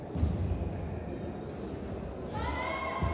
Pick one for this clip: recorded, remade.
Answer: recorded